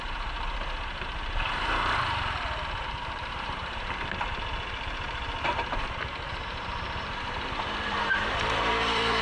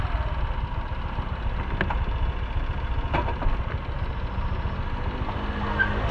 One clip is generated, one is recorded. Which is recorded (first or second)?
second